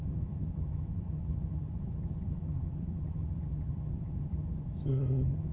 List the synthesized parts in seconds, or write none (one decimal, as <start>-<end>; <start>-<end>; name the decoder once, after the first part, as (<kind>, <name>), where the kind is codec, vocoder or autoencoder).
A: 0.0-5.5 (vocoder, HiFi-GAN)